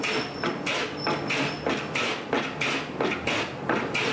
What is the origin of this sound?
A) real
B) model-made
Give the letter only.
A